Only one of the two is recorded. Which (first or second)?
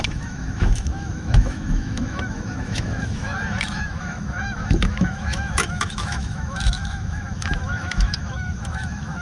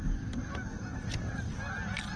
second